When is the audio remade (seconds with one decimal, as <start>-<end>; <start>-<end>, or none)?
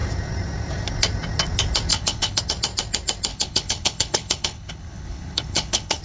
1.9-2.4; 3.3-6.0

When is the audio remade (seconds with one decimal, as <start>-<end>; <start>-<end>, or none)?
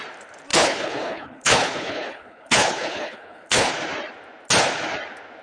0.5-3.7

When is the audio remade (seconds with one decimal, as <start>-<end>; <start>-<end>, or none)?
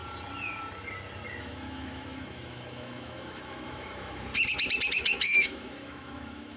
1.4-4.3; 4.9-6.6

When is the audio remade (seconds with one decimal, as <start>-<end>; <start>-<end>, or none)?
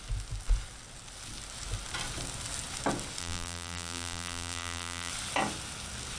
3.2-5.1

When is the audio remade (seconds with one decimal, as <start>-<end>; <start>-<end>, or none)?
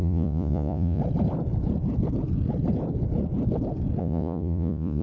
0.0-1.0; 4.0-5.0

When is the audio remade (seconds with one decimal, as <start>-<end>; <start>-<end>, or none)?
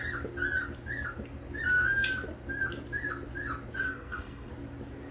3.8-4.5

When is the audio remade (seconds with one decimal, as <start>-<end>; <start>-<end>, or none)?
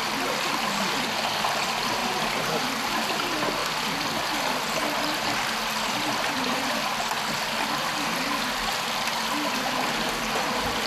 2.0-2.7; 3.6-7.0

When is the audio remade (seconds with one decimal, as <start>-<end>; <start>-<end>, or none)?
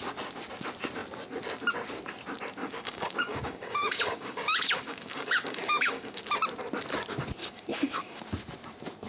2.6-6.2; 7.4-8.2